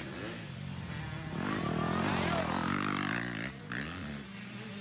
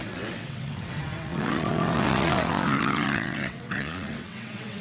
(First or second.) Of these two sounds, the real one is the first